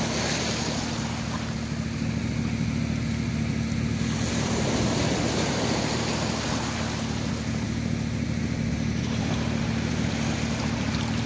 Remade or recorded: recorded